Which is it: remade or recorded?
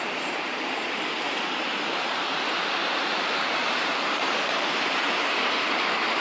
remade